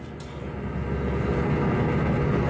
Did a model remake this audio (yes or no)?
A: no